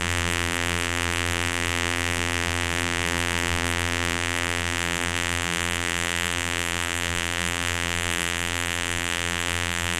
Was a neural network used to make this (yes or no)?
yes